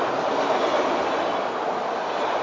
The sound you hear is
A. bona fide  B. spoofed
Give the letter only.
A